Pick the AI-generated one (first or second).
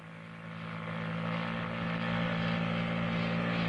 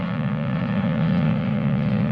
second